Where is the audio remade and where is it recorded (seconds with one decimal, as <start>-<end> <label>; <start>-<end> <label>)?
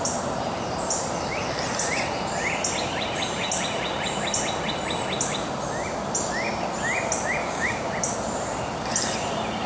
0.0-7.4 recorded; 7.4-7.9 remade; 7.9-9.7 recorded